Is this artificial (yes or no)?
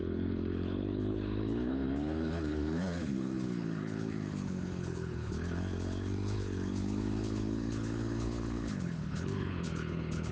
yes